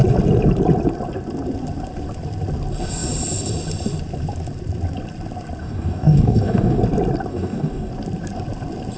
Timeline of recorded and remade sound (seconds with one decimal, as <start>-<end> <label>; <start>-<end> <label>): 0.0-5.6 recorded; 5.6-6.8 remade; 6.8-7.3 recorded; 7.3-7.9 remade; 7.9-9.0 recorded

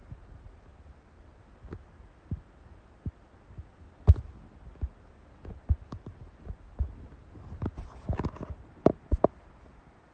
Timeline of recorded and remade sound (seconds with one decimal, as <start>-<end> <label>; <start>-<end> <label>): 0.0-10.1 recorded

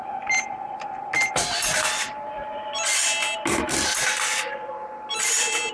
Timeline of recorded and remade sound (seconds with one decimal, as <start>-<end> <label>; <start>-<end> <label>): 0.0-5.7 recorded

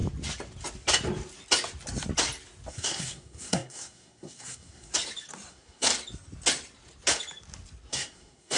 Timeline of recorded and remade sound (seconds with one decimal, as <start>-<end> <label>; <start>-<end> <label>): 0.0-2.7 recorded; 2.7-4.9 remade; 4.9-5.5 recorded; 5.5-5.9 remade; 5.9-7.9 recorded; 7.9-8.6 remade

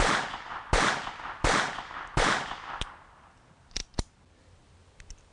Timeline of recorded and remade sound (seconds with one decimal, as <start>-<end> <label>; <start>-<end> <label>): 0.0-5.3 recorded